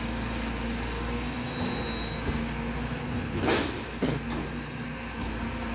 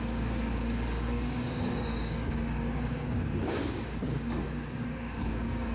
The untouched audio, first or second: first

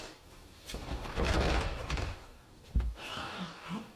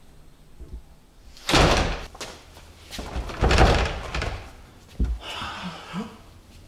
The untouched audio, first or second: second